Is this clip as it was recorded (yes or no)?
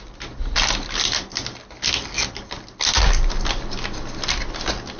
yes